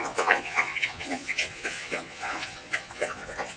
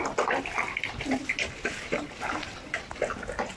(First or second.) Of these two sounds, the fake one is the first